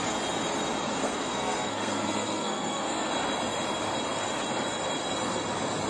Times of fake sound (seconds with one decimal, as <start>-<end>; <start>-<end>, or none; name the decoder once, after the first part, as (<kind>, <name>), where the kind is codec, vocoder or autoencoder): 1.0-3.1 (codec, SNAC)